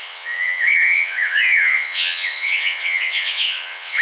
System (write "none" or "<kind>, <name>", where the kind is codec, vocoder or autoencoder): vocoder, WaveNeXt